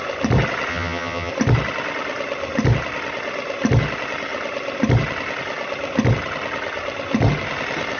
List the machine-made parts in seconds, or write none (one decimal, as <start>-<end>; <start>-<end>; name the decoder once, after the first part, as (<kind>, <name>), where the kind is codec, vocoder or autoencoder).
0.7-1.3 (vocoder, HiFi-GAN)